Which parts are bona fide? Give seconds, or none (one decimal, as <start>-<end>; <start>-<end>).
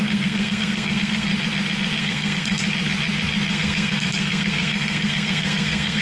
1.3-2.0; 2.6-3.5